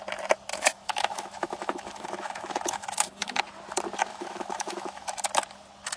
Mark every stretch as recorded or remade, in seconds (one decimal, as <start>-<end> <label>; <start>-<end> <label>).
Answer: 0.0-0.5 recorded; 0.5-3.4 remade; 3.4-4.1 recorded; 4.1-5.2 remade; 5.2-6.0 recorded